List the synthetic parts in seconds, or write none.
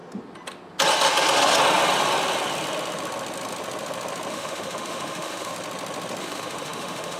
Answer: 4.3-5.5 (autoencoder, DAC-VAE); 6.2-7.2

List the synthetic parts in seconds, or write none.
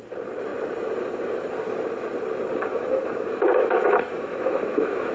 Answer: 2.7-5.1 (autoencoder, DAC-VAE)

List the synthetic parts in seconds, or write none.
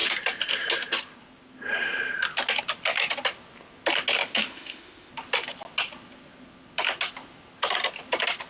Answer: 4.2-5.1 (autoencoder, DAC-VAE)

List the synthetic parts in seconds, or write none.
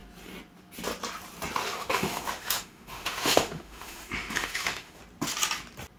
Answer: 1.6-5.0 (autoencoder, DAC-VAE)